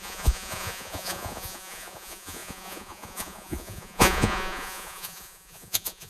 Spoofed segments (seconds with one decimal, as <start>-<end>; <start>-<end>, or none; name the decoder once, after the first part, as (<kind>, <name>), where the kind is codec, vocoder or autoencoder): 0.0-6.1 (vocoder, Vocos)